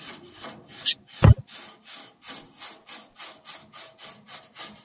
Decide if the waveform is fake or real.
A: real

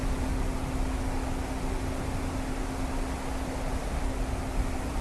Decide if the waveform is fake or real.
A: fake